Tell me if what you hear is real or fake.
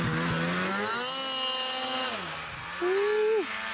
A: real